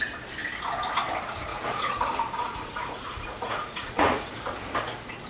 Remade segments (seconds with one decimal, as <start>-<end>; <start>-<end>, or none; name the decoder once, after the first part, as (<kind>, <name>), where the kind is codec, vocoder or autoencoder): 1.5-2.0 (vocoder, Vocos); 2.4-4.3